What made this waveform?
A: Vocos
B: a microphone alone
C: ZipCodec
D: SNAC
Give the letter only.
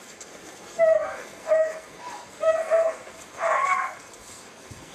D